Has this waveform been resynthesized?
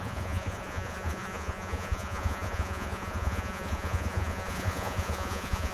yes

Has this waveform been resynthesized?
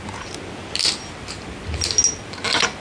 no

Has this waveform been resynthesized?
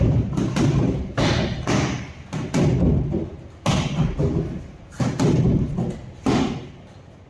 no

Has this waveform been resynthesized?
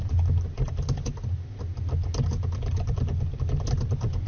no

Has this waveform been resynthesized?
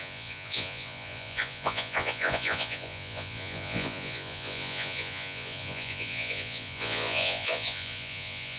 yes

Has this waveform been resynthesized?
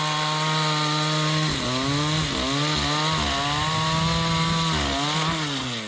no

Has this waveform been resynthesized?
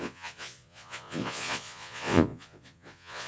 yes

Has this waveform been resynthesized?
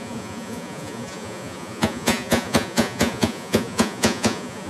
yes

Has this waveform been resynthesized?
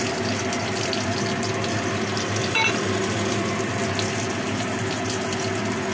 no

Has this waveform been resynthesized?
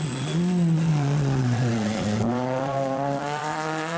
yes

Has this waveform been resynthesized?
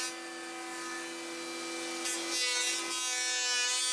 no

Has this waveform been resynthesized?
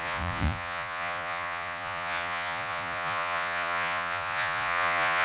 yes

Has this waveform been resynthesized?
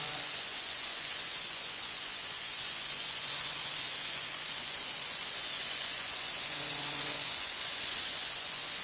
yes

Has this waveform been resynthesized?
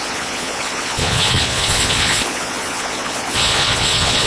yes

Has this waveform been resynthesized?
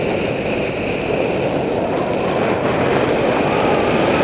no